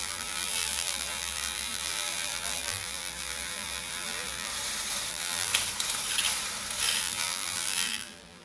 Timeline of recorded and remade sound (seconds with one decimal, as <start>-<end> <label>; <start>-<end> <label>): 0.0-4.5 remade; 4.5-5.1 recorded; 5.1-5.5 remade; 5.5-7.0 recorded; 7.0-8.4 remade